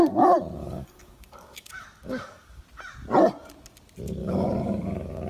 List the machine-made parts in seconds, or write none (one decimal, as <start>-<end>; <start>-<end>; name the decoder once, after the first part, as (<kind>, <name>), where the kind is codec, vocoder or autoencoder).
0.6-2.6 (codec, DAC); 4.2-5.3